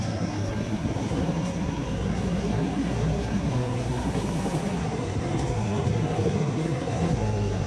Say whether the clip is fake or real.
fake